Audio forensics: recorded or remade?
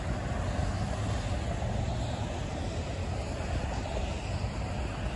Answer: recorded